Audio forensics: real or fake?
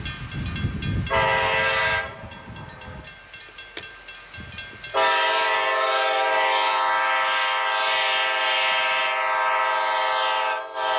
real